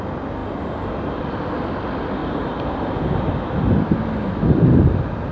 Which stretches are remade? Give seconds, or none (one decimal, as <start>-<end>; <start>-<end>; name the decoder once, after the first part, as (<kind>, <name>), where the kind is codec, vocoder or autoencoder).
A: 2.2-3.3 (vocoder, BigVGAN v2)